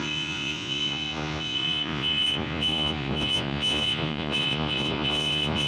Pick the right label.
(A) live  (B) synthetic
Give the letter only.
B